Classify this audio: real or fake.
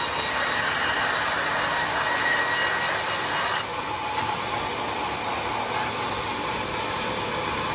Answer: real